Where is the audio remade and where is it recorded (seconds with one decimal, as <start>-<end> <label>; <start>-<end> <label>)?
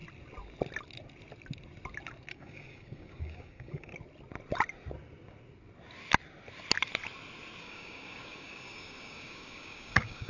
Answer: 0.0-2.3 recorded; 2.3-3.9 remade; 3.9-7.6 recorded; 7.6-10.3 remade